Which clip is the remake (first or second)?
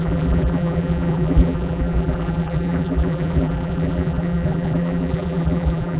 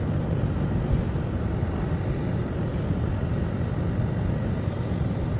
first